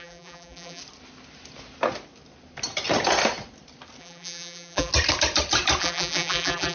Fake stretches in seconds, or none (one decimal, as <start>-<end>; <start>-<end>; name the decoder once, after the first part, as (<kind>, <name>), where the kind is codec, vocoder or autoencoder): 0.0-0.8 (vocoder, BigVGAN v2); 4.0-4.9; 5.8-6.7